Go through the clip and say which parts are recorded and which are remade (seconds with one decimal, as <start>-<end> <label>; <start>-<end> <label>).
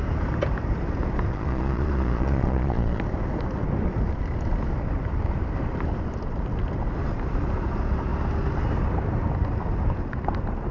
0.0-1.3 recorded; 1.3-3.0 remade; 3.0-10.7 recorded